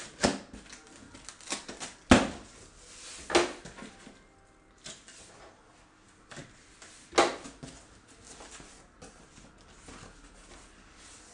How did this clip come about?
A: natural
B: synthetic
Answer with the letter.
A